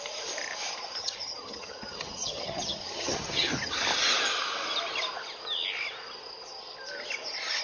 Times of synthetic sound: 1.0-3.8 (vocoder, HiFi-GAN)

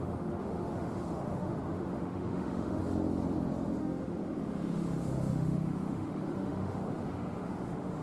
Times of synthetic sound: 0.0-2.8 (autoencoder, DAC-VAE); 3.8-8.0

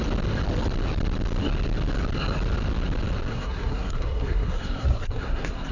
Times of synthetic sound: 3.3-5.7 (codec, SNAC)

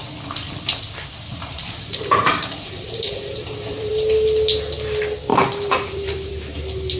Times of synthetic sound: 1.3-3.9 (vocoder, BigVGAN v2); 5.3-6.3

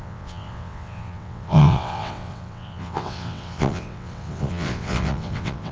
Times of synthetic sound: 0.0-5.7 (vocoder, WaveNeXt)